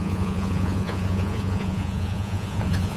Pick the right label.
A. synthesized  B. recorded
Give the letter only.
A